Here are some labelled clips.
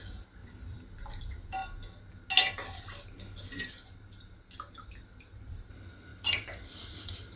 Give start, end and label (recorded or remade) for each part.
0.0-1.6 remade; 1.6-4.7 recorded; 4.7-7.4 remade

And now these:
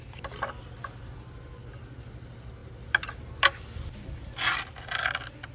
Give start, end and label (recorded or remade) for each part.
0.0-5.5 recorded

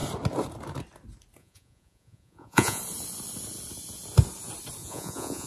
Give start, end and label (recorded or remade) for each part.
0.0-1.4 recorded; 1.4-2.8 remade; 2.8-4.8 recorded; 4.8-5.5 remade